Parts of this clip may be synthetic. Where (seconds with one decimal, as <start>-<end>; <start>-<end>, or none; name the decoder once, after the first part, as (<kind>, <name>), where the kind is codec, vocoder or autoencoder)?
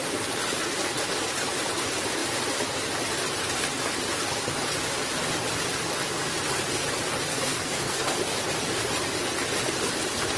7.3-8.2 (codec, SNAC)